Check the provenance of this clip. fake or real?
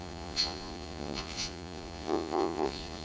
fake